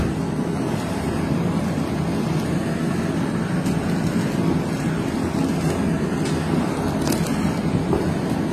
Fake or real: real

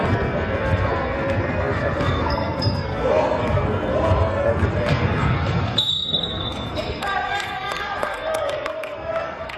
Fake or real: fake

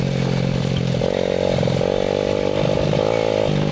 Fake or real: real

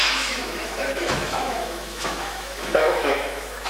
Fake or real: fake